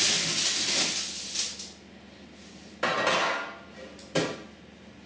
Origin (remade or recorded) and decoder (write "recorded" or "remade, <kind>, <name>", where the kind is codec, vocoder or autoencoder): recorded